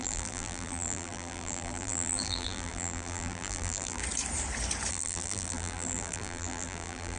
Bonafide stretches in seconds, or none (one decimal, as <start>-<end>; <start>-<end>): 4.0-4.9